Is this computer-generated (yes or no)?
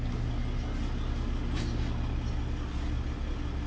no